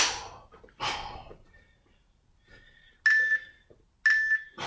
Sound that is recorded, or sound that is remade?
recorded